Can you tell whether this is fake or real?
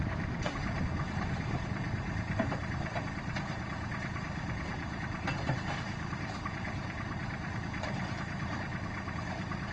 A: fake